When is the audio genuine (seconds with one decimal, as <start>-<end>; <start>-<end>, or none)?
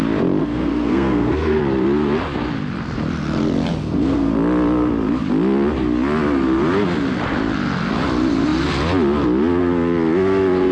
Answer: 0.0-0.4; 1.6-3.8; 4.3-10.7